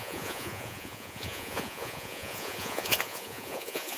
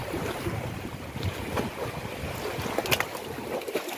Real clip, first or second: second